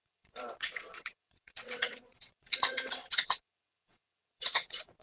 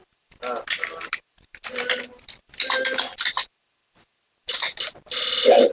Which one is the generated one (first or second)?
first